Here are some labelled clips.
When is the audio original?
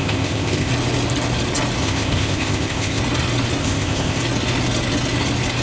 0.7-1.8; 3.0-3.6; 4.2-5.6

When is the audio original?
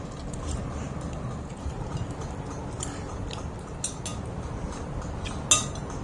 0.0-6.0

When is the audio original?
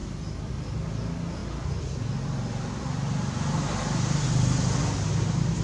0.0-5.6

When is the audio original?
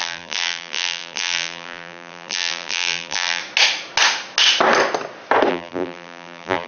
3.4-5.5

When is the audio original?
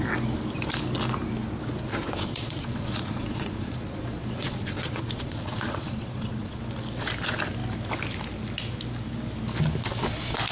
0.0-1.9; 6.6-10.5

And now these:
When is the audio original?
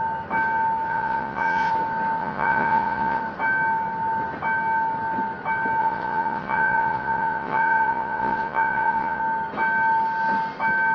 0.0-0.9; 1.7-2.2; 3.2-5.8; 9.2-10.9